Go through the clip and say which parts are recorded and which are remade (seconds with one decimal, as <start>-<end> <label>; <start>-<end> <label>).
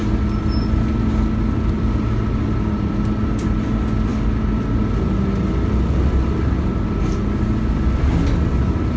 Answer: 0.0-9.0 recorded